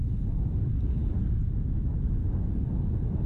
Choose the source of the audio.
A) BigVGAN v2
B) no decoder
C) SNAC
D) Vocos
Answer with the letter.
B